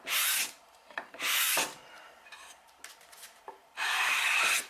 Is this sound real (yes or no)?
yes